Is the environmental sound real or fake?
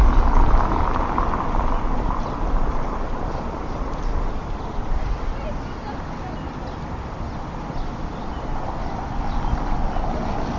real